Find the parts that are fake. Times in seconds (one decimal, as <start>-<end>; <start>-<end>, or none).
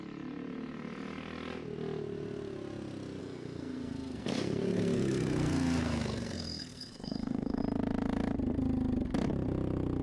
3.2-7.6